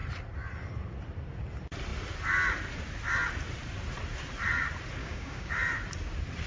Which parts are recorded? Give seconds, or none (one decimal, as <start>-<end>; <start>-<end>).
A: 0.0-5.0; 5.5-6.5